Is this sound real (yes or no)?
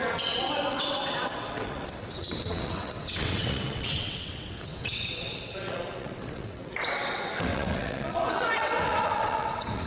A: no